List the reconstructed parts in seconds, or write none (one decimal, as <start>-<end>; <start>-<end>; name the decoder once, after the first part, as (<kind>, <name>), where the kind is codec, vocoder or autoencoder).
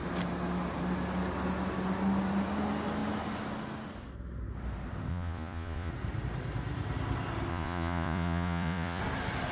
5.1-5.9 (vocoder, Vocos); 7.5-9.0